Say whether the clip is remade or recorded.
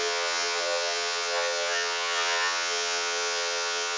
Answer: remade